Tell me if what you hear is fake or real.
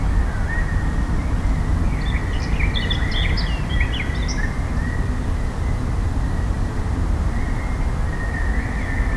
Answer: real